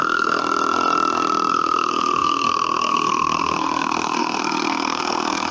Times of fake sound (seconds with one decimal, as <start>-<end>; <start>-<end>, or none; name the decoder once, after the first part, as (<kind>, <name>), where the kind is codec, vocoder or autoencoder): 0.0-0.4 (codec, SNAC); 1.5-5.5